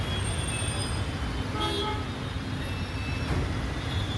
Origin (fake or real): real